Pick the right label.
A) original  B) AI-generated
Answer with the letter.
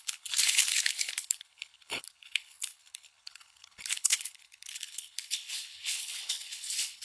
B